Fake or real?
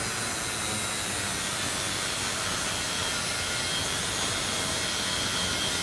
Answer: real